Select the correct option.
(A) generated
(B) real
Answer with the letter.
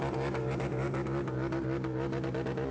B